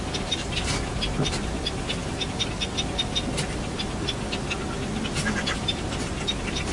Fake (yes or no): no